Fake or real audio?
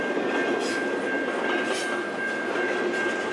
real